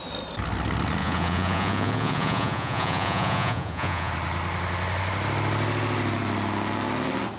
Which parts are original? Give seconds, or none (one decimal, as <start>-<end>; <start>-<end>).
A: 0.0-1.0; 4.1-7.4